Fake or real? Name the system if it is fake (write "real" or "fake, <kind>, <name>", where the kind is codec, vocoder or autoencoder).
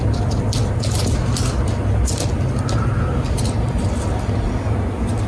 real